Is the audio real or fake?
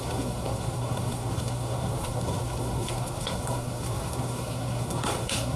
fake